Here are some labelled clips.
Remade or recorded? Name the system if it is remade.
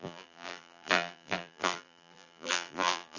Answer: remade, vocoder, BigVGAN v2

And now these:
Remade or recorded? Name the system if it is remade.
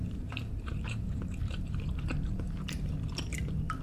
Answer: remade, vocoder, BigVGAN v2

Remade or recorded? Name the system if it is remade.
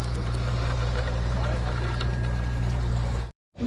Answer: remade, vocoder, BigVGAN v2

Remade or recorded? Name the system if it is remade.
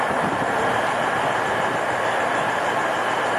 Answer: remade, vocoder, BigVGAN v2